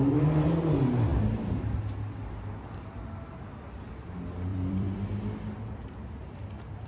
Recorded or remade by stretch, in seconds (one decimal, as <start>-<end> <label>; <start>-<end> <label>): 0.0-4.5 recorded; 4.5-5.0 remade; 5.0-6.9 recorded